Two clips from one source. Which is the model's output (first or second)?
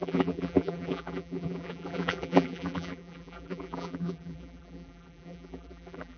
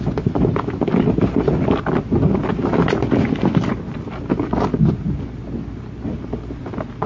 first